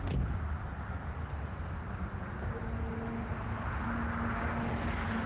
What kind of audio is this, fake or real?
real